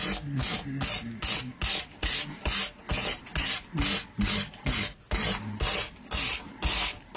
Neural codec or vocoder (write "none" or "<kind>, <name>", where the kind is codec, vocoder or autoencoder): none